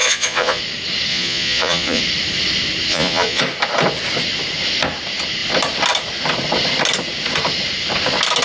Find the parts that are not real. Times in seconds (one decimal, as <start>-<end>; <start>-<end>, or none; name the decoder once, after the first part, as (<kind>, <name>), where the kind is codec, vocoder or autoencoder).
0.0-0.6 (vocoder, Vocos); 1.1-2.0; 2.9-3.4